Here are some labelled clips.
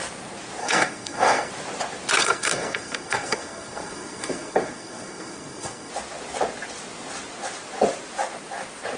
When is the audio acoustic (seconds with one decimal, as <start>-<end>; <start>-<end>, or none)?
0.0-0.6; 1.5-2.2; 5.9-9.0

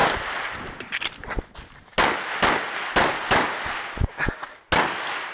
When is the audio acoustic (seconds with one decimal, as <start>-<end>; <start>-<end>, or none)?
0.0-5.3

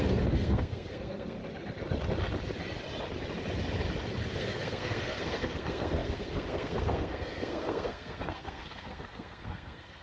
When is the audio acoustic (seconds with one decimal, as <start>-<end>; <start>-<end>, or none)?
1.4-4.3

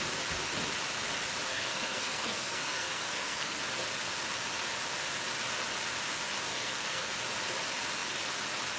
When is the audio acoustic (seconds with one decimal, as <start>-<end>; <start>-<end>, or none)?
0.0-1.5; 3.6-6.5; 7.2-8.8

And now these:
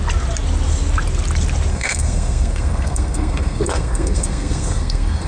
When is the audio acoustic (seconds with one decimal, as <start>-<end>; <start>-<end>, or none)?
0.0-1.7

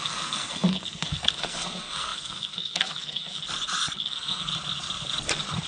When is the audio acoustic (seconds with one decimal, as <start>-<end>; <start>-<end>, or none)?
3.4-4.0; 4.5-5.7

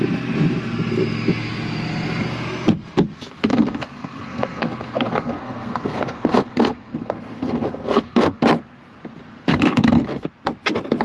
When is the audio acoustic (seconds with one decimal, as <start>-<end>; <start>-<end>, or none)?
0.0-3.5; 8.4-9.4; 10.3-11.0

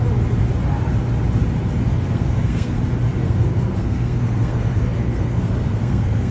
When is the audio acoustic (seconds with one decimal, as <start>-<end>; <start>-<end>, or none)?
0.0-1.8; 2.8-3.2